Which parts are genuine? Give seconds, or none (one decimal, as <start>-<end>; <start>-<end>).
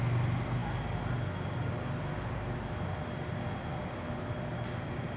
0.0-5.2